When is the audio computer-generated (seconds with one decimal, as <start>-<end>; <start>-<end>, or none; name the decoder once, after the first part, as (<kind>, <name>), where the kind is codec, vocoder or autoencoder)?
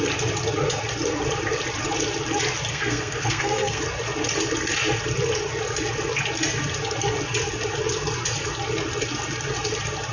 2.7-3.8 (codec, SNAC)